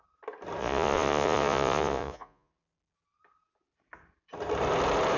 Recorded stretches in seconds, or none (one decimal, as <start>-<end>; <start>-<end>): 0.0-0.6; 2.5-5.2